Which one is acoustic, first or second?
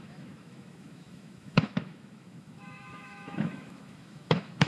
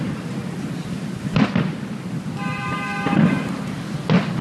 second